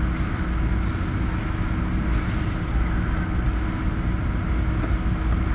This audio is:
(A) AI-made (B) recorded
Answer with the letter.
B